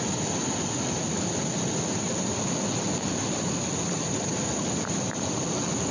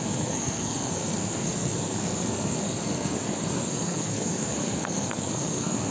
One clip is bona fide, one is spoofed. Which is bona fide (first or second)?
first